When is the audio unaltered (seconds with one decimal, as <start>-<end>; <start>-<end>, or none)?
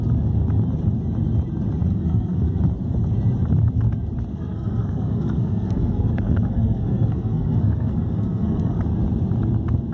0.0-1.9; 2.6-4.3; 8.8-9.9